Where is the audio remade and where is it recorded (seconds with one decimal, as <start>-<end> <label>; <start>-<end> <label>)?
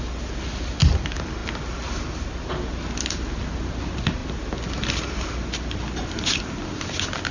0.0-7.3 recorded